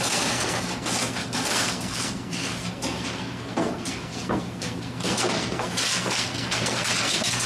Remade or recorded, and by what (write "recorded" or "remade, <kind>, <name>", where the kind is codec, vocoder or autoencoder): remade, codec, SNAC